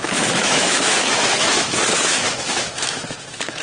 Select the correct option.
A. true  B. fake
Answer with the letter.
B